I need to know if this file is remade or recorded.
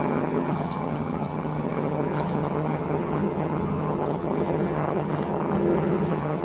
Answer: remade